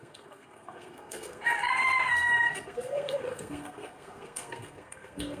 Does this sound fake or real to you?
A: fake